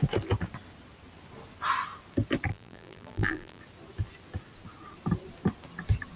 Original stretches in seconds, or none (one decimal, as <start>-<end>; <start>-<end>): 0.0-2.5; 3.6-6.2